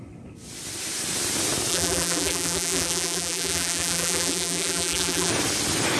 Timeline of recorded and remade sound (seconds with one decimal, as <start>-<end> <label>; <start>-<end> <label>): 0.0-1.7 recorded; 1.7-5.3 remade; 5.3-6.0 recorded